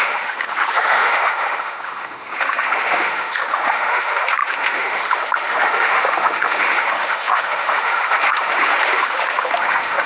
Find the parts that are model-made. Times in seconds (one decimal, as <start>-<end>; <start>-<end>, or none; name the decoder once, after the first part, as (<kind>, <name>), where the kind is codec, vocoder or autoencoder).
0.0-10.1 (autoencoder, DAC-VAE)